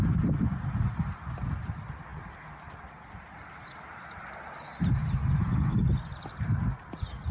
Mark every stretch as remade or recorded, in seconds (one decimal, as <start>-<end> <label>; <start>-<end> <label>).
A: 0.0-7.3 recorded